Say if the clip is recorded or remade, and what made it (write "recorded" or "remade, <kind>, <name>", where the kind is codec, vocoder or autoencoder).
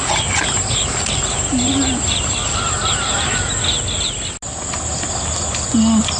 recorded